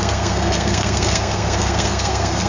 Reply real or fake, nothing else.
fake